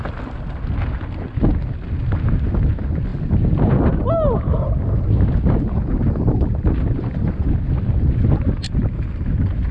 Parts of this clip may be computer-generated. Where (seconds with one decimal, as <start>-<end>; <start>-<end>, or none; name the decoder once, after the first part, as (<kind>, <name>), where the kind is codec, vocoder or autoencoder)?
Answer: none